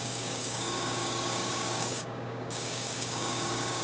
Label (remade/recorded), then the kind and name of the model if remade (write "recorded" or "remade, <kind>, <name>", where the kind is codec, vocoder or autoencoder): remade, codec, DAC